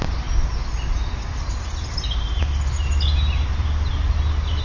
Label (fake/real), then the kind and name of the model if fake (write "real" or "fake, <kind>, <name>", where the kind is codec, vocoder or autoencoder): real